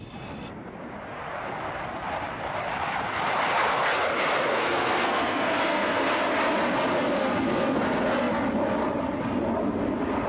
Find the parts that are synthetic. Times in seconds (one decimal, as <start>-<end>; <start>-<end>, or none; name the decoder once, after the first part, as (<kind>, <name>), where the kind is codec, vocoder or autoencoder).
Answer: 4.5-6.1 (codec, SNAC); 7.2-8.3